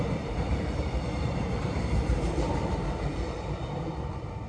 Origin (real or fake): fake